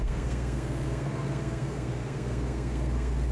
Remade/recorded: remade